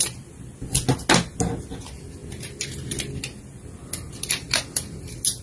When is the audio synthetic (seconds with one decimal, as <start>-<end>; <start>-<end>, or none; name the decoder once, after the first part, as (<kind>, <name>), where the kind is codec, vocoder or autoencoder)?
none